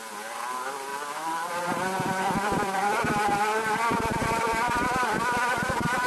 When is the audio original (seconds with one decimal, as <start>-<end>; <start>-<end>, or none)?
0.9-1.6; 3.1-4.0